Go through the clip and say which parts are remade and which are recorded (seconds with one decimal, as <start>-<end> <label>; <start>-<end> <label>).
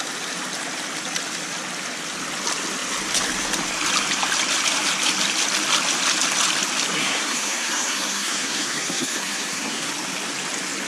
0.0-7.0 recorded; 7.0-9.9 remade; 9.9-10.9 recorded